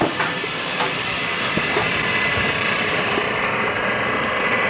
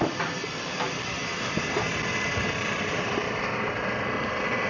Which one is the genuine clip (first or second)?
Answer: second